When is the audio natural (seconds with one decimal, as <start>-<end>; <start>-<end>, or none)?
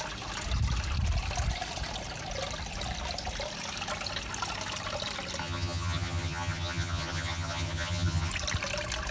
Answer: 0.0-5.4; 8.3-9.1